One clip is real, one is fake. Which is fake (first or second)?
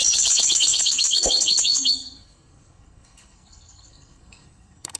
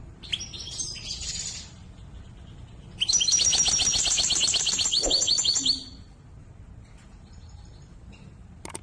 first